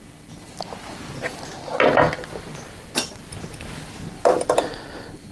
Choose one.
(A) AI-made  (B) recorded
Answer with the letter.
B